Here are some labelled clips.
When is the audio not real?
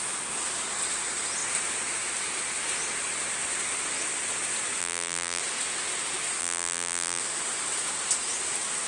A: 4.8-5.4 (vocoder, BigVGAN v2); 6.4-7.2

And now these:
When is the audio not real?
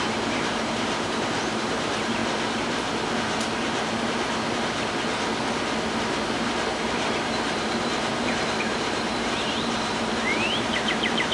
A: 0.0-2.2 (vocoder, BigVGAN v2); 6.7-11.3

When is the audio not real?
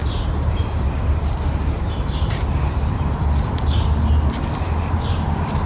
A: 1.6-3.2 (vocoder, BigVGAN v2); 5.0-5.7